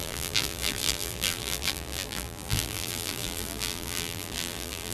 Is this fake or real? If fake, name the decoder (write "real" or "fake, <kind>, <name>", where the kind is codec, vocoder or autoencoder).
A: fake, vocoder, BigVGAN v2